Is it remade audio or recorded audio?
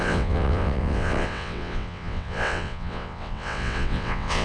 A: remade